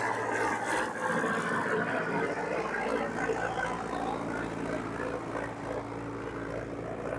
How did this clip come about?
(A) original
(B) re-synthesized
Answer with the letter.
A